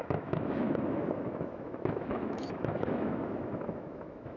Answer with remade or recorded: remade